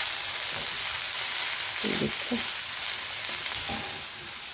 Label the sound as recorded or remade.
recorded